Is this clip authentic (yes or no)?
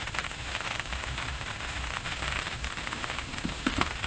no